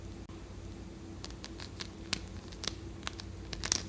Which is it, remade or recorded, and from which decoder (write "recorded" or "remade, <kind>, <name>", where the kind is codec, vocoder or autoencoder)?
recorded